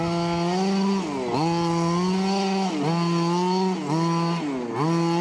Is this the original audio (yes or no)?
yes